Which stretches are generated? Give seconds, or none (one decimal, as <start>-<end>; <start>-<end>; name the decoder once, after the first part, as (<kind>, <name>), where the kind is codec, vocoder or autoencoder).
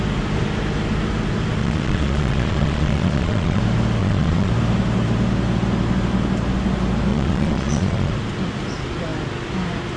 1.6-3.6 (vocoder, Vocos); 4.0-4.5; 7.1-8.1